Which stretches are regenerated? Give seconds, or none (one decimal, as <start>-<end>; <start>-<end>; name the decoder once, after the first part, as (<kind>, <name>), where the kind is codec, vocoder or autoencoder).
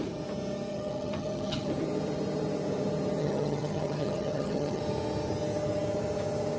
0.7-1.7 (vocoder, HiFi-GAN); 3.2-4.8